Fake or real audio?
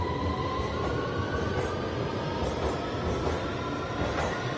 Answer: real